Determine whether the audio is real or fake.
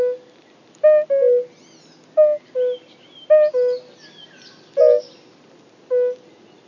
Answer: real